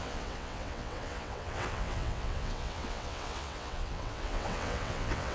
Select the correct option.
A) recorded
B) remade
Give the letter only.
B